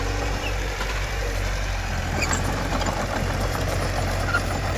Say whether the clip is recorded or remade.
remade